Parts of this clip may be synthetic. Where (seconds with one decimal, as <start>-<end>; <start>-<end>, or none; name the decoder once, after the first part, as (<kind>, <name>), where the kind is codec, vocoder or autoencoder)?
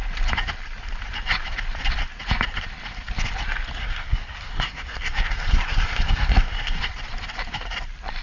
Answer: 3.8-6.8 (codec, SNAC)